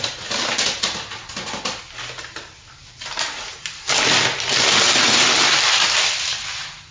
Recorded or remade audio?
recorded